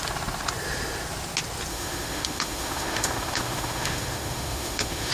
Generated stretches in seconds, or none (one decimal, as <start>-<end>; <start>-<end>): 1.7-5.1